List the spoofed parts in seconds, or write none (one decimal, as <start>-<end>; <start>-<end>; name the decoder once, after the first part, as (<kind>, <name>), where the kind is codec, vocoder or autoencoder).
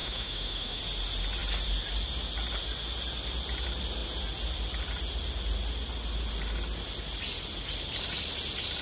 0.0-0.8 (autoencoder, DAC-VAE)